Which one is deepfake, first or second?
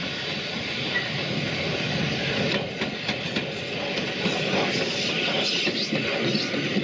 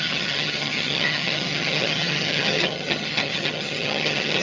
second